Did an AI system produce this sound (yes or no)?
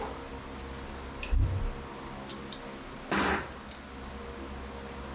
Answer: no